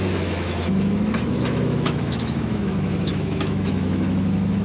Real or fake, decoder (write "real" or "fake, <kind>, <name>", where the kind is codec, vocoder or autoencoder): fake, autoencoder, DAC-VAE